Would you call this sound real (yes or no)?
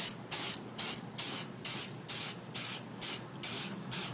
yes